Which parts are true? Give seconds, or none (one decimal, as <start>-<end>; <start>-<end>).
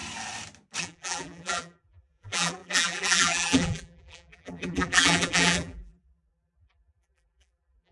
0.0-0.8